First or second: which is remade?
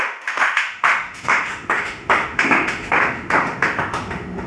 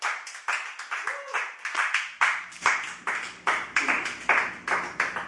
first